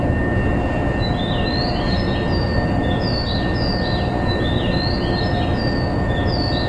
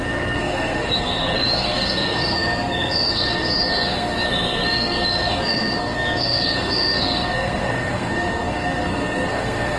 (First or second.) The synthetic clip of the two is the second